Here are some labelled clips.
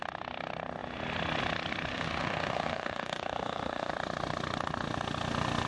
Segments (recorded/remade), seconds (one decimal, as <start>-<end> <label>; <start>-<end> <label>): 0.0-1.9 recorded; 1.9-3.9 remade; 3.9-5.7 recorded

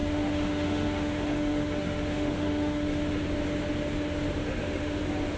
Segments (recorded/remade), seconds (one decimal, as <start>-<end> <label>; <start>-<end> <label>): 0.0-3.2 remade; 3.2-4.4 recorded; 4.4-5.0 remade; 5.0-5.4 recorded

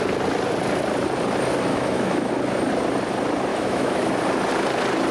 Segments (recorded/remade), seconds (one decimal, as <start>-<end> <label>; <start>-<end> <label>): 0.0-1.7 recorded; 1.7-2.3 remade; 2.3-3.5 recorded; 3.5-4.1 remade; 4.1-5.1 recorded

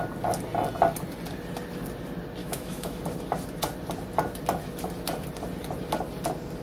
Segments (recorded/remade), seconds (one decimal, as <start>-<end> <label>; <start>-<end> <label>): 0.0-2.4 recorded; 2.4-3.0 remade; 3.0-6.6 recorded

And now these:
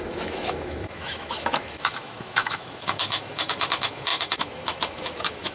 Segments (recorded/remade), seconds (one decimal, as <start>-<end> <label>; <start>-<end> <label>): 0.0-5.5 remade

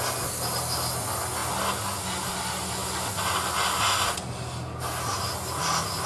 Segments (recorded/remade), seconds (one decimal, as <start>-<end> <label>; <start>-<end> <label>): 0.0-6.1 recorded

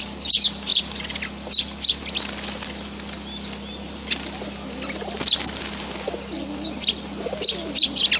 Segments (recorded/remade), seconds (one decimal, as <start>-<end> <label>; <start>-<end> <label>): 0.0-8.2 recorded

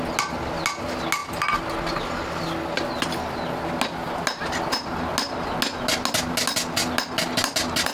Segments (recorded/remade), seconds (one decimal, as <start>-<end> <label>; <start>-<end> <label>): 0.0-7.9 recorded